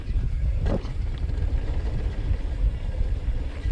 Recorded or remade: remade